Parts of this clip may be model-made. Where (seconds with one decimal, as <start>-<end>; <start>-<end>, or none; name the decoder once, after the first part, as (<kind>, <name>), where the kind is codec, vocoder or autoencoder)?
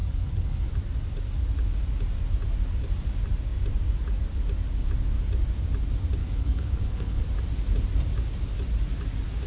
0.0-0.7 (codec, HILCodec); 6.2-7.2